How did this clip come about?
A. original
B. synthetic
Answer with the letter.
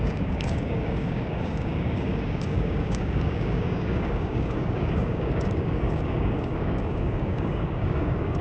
B